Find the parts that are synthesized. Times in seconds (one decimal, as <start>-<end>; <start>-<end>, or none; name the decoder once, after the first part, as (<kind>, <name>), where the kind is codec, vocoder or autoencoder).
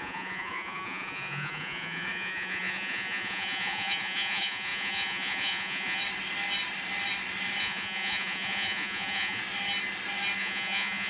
0.0-6.0 (vocoder, Vocos); 7.6-9.4; 10.4-11.1